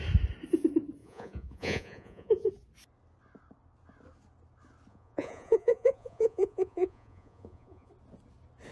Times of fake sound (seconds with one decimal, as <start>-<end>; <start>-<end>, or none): 1.0-2.5; 4.9-7.9

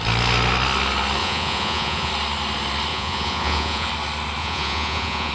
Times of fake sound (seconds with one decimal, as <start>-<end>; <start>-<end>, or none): 1.2-2.1; 2.9-3.9; 4.4-5.3

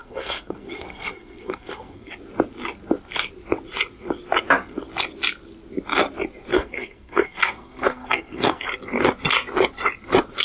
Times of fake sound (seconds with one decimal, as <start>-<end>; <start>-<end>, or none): 0.0-2.1; 6.5-8.6

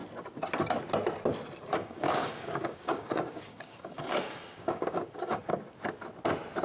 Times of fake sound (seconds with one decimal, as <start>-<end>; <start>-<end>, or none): 1.8-5.5

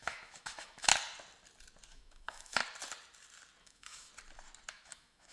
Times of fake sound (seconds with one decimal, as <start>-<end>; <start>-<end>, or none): 0.0-0.9; 1.9-2.6; 3.6-4.1; 4.7-5.3

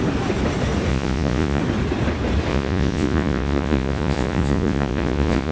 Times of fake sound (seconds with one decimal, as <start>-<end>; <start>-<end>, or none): 0.9-1.6; 2.5-5.5

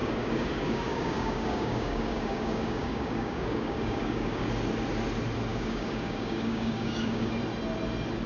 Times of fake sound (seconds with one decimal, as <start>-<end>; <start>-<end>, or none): 0.0-4.5; 5.5-7.4